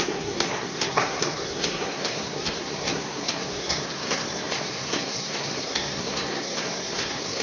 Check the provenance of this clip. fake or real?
fake